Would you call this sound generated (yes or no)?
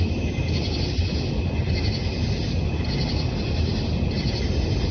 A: no